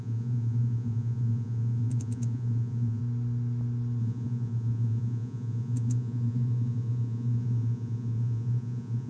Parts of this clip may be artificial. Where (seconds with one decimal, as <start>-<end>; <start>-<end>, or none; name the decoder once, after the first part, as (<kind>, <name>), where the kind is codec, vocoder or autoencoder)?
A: 0.0-3.0 (vocoder, Vocos); 4.0-9.1